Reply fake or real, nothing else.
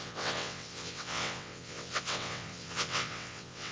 fake